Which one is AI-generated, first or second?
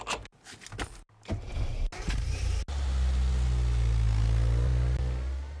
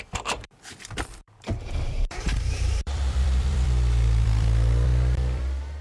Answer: second